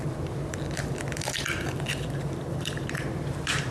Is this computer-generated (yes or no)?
yes